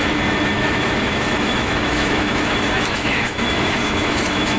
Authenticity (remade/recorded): remade